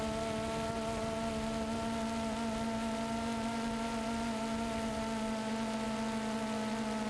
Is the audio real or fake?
real